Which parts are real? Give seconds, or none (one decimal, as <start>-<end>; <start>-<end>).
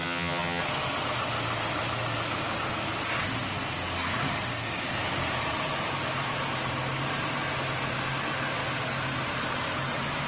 0.6-10.3